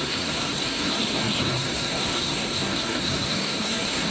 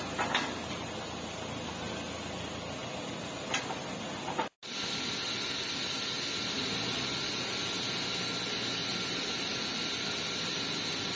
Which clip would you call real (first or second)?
second